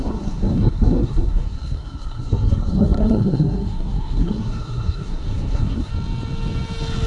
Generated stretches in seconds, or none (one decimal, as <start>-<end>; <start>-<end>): 0.0-5.9